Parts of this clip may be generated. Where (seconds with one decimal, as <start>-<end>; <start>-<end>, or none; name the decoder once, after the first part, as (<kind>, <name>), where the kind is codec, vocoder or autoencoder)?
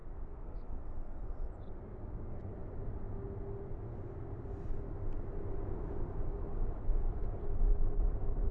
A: 0.0-0.8 (codec, SNAC)